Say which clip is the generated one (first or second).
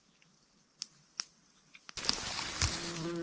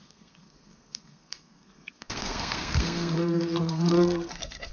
second